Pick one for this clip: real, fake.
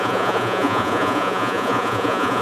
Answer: fake